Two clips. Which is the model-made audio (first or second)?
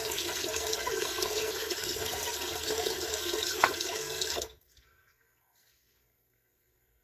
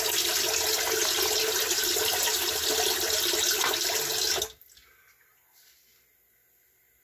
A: first